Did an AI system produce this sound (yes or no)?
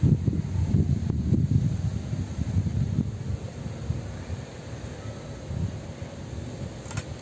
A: no